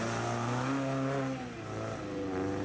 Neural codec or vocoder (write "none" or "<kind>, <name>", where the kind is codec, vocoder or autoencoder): none